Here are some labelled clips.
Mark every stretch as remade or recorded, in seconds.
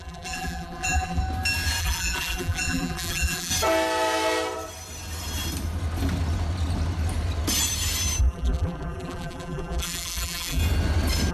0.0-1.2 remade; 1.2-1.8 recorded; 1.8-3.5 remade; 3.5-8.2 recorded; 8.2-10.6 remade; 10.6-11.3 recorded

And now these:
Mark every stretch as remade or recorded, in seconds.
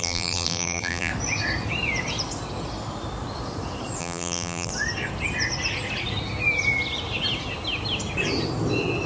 0.0-1.1 remade; 1.1-4.0 recorded; 4.0-4.7 remade; 4.7-9.1 recorded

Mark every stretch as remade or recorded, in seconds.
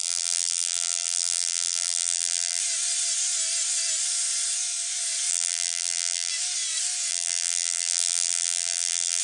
0.0-2.6 remade; 2.6-5.3 recorded; 5.3-6.3 remade; 6.3-7.1 recorded; 7.1-9.2 remade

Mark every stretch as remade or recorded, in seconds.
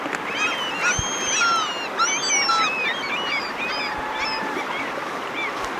0.0-5.8 recorded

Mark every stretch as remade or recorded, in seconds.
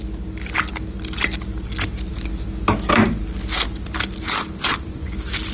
0.0-5.5 recorded